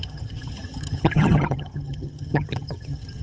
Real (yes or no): no